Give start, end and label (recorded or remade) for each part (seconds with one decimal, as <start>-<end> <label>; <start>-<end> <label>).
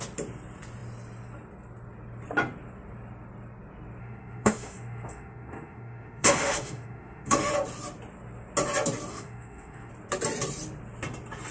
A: 0.0-4.0 recorded; 4.0-7.5 remade; 7.5-9.1 recorded; 9.1-9.9 remade; 9.9-11.5 recorded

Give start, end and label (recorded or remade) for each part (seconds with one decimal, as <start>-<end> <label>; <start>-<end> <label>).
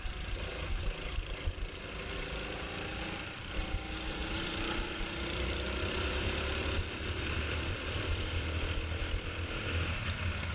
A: 0.0-4.2 recorded; 4.2-6.6 remade; 6.6-10.5 recorded